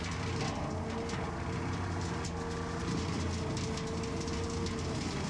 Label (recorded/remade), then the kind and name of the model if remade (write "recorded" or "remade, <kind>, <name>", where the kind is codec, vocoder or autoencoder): recorded